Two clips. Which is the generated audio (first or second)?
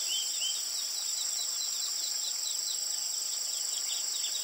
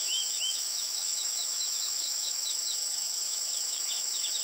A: second